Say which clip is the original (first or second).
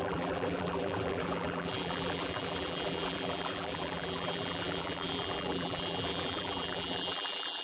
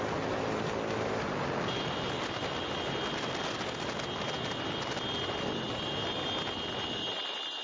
second